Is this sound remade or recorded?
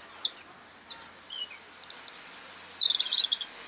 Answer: recorded